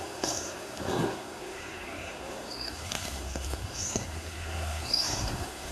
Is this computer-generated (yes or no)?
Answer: yes